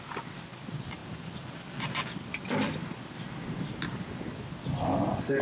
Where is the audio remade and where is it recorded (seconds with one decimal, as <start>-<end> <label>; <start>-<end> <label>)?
0.0-5.4 recorded